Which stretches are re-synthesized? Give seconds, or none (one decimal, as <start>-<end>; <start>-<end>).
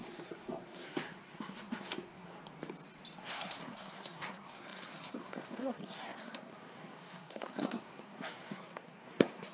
0.0-2.4; 3.2-9.5